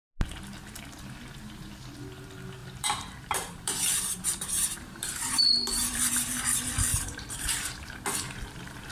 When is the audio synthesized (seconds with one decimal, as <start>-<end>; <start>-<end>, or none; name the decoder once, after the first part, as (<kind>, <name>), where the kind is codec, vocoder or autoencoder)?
2.6-6.1 (vocoder, BigVGAN v2); 6.9-7.9

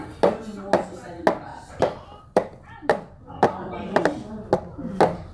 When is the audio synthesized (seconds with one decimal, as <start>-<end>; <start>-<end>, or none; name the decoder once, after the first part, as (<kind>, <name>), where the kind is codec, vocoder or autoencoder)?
1.5-4.3 (vocoder, BigVGAN v2)